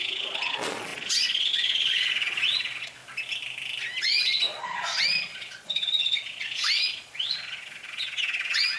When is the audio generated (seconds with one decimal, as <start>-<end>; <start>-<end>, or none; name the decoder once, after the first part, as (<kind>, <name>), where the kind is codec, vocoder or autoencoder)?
0.0-3.0 (vocoder, Vocos); 4.0-8.8